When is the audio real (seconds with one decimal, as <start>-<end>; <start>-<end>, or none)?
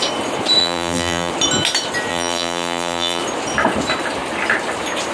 0.0-0.6; 1.3-2.1; 3.2-5.1